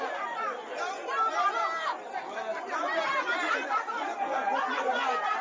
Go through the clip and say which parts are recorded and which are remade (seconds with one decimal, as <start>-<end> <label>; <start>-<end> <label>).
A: 0.0-5.4 recorded